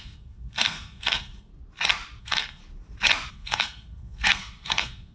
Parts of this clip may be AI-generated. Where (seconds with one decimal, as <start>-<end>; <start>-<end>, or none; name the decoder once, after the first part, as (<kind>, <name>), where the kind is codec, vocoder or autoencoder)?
0.0-1.5 (codec, SNAC); 2.2-2.6; 3.3-5.1